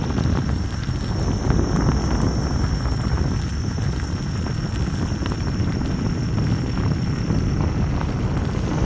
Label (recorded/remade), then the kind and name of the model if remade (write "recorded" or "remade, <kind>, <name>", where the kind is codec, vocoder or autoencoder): recorded